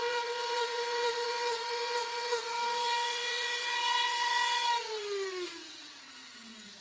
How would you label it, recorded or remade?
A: remade